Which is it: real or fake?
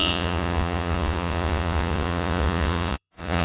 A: fake